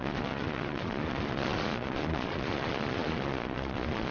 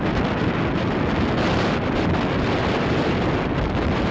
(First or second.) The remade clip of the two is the first